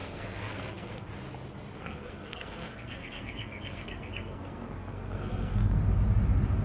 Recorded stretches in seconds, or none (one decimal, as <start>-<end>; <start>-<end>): 1.1-1.8; 5.8-6.6

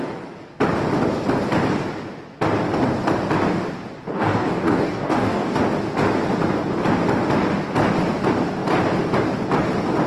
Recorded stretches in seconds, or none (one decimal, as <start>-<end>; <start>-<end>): 0.0-4.1; 5.6-10.1

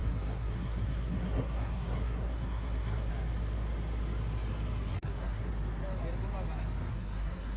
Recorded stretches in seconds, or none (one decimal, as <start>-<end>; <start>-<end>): 3.1-4.9; 5.5-6.9

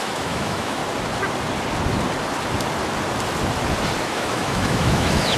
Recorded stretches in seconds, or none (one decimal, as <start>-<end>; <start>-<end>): 0.8-4.0

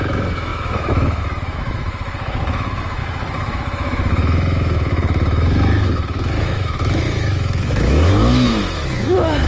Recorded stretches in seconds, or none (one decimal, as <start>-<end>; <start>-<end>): none

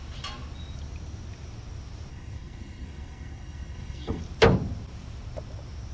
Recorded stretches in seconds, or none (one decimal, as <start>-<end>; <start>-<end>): 0.0-2.1; 4.2-5.9

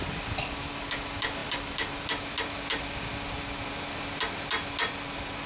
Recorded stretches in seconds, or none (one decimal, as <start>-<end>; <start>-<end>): 0.0-5.5

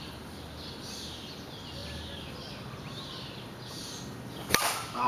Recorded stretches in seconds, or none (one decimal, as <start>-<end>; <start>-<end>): 0.0-5.1